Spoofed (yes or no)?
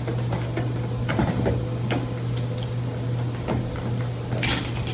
no